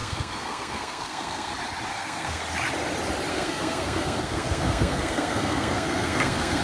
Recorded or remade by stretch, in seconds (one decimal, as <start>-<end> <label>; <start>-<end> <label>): 0.0-1.5 remade; 1.5-1.9 recorded; 1.9-2.4 remade; 2.4-3.3 recorded; 3.3-6.6 remade